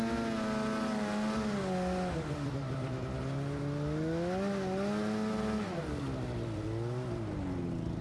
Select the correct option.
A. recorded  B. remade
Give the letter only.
A